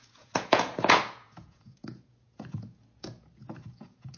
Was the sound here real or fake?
fake